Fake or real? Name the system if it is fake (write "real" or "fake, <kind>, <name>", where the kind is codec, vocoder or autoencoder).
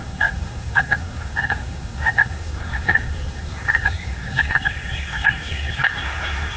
fake, codec, SNAC